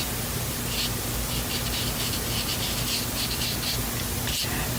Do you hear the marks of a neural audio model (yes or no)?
no